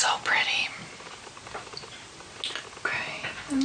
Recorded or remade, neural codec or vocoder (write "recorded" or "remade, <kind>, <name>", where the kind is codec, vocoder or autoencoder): recorded